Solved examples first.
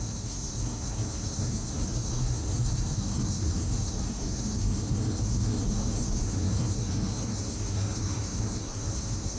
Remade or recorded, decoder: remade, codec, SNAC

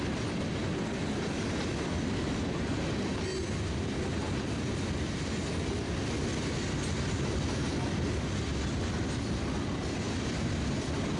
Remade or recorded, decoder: recorded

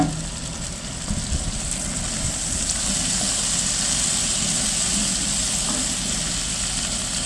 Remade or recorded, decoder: recorded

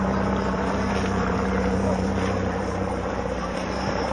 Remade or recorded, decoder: remade, vocoder, BigVGAN v2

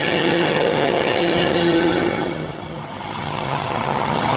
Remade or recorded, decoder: remade, vocoder, HiFi-GAN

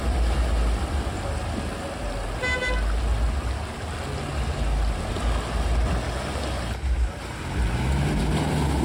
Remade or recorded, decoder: recorded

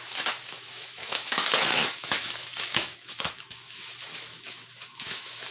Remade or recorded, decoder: remade, autoencoder, DAC-VAE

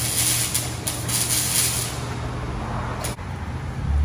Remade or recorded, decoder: recorded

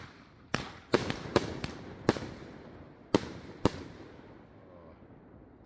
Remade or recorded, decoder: recorded